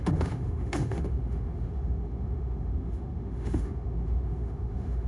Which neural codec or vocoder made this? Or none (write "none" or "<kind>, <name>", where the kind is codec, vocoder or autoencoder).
autoencoder, DAC-VAE